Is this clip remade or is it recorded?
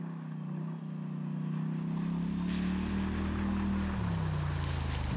recorded